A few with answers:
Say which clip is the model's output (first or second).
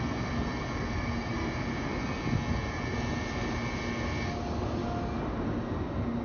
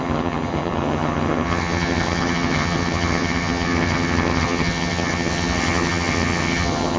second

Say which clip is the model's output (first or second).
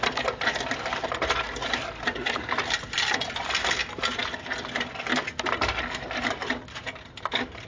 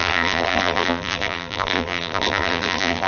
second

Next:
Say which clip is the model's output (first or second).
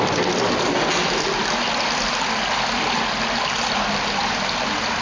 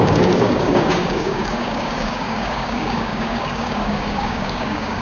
second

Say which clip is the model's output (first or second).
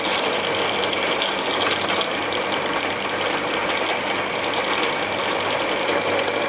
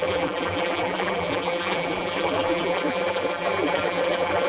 second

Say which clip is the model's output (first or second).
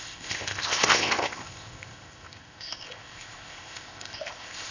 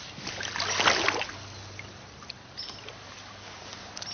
first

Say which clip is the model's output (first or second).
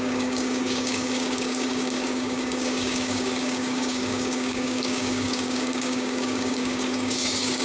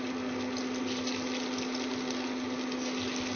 first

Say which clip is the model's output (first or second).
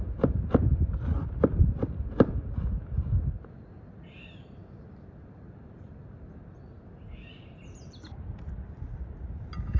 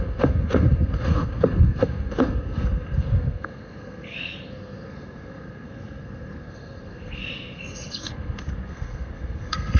second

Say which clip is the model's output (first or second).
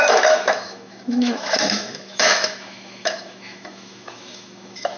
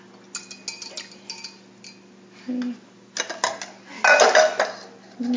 first